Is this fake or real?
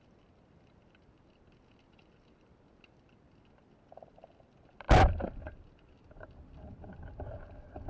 real